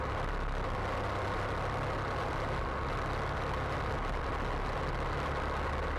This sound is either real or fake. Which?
real